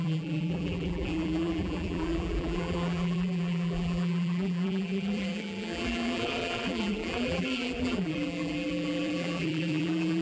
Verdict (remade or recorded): remade